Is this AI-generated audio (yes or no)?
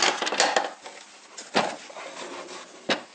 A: no